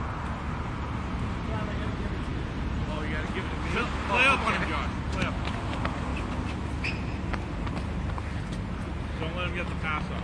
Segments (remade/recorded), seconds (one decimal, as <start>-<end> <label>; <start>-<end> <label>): 0.0-10.2 recorded